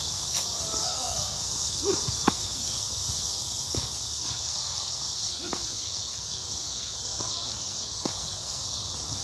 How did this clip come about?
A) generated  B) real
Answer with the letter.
A